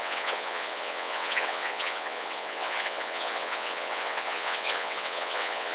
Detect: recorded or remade remade